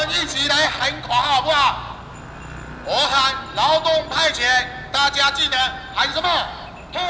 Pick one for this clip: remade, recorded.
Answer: recorded